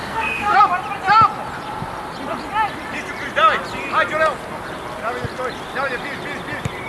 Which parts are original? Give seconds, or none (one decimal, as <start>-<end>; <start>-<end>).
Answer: 0.6-6.9